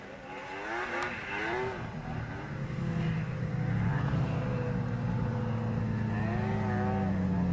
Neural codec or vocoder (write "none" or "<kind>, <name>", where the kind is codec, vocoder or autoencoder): none